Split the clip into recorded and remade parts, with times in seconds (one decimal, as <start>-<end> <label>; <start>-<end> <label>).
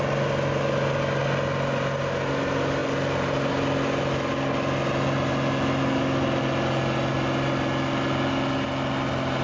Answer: 0.0-9.4 recorded